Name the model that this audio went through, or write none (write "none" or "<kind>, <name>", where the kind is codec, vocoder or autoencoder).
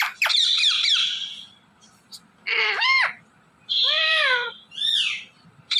vocoder, BigVGAN v2